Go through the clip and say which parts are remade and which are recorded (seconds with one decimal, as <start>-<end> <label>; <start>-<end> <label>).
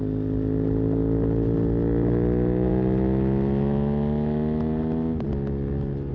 0.0-6.1 recorded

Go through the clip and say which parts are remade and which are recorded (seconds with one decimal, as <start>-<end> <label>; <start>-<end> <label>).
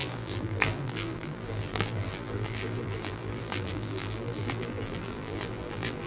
0.0-6.1 remade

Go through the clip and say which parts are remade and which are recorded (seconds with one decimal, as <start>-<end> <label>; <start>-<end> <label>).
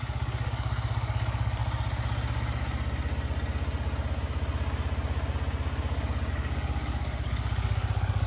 0.0-1.6 remade; 1.6-6.3 recorded; 6.3-8.3 remade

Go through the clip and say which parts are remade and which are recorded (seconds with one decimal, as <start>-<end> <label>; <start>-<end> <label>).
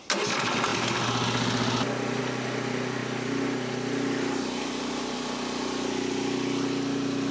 0.0-7.3 recorded